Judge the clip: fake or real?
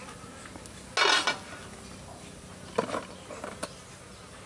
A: real